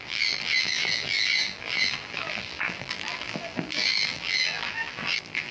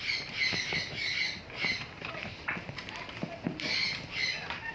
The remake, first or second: first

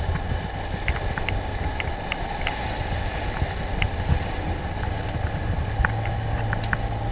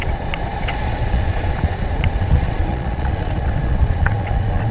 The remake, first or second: second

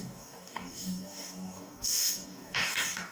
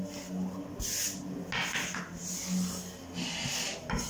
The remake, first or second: first